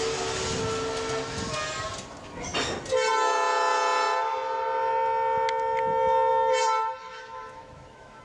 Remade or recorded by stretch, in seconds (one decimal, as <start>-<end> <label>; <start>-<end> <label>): 0.0-7.0 recorded; 7.0-8.2 remade